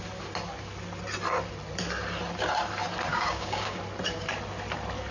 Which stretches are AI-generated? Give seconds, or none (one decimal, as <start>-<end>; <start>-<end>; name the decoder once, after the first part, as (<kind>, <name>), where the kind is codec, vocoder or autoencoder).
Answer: 3.1-3.8 (codec, DAC)